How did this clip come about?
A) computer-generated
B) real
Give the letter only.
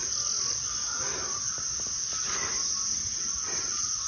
B